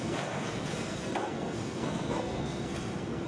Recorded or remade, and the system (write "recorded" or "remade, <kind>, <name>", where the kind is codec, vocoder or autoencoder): remade, codec, SNAC